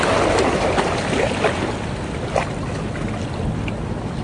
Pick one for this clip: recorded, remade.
recorded